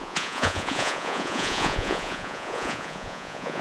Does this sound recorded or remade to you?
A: remade